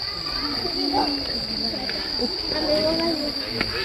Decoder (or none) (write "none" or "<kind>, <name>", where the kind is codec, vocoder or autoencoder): none